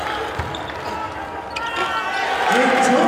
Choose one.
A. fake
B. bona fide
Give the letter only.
B